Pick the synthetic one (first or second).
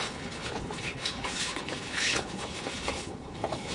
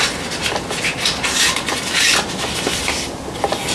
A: first